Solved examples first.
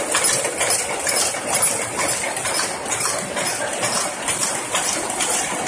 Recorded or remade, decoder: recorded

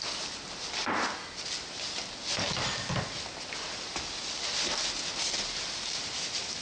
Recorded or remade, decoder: recorded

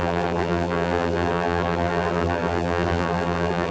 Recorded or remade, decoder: remade, vocoder, BigVGAN v2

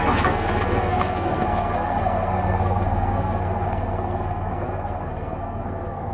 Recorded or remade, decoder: remade, codec, SNAC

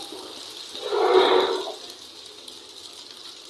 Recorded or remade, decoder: recorded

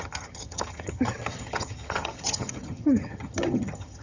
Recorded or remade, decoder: remade, vocoder, HiFi-GAN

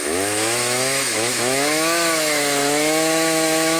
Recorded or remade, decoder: remade, autoencoder, DAC-VAE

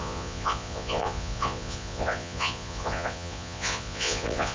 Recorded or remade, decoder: remade, vocoder, Vocos